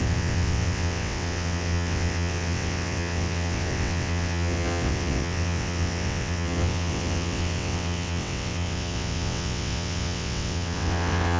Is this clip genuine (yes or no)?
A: no